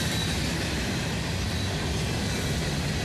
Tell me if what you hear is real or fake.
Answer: real